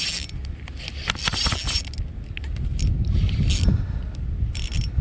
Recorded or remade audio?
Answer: recorded